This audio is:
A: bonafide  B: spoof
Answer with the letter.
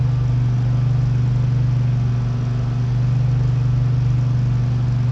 A